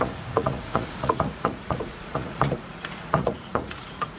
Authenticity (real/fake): fake